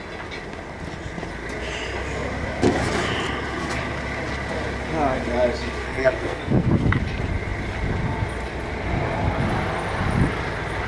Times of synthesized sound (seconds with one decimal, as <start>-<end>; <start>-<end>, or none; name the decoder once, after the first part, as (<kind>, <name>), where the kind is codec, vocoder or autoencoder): 5.8-7.0 (codec, SNAC)